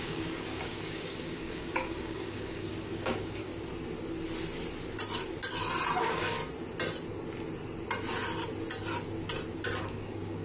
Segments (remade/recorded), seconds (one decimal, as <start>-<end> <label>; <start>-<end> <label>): 0.0-3.5 remade; 3.5-6.0 recorded; 6.0-6.4 remade; 6.4-9.8 recorded; 9.8-10.4 remade